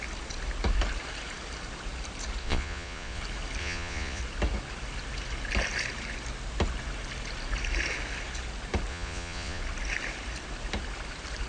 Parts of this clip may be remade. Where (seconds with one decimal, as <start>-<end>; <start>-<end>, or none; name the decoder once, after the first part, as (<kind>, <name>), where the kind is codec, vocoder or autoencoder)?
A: 2.4-3.2 (vocoder, Vocos); 3.6-4.2; 8.9-9.6